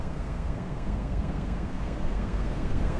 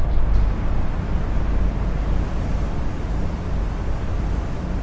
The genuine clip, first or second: second